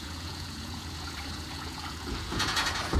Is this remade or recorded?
remade